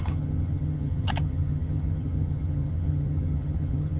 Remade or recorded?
remade